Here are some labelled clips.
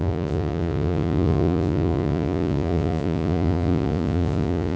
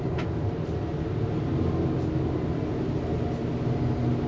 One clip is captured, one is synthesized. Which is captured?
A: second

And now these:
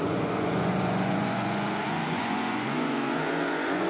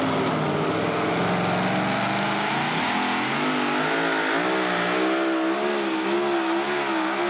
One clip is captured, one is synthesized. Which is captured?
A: second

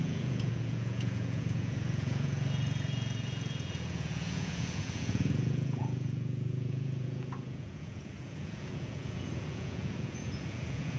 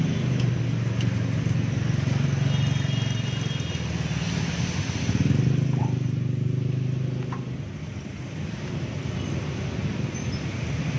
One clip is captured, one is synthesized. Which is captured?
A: second